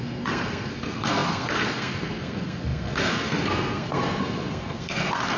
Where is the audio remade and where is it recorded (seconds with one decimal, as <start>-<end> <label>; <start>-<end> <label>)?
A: 0.0-5.4 remade